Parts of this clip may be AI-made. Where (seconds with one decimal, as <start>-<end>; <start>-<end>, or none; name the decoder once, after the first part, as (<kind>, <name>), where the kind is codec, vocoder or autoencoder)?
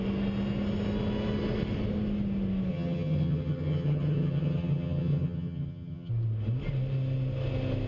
2.7-6.1 (vocoder, HiFi-GAN)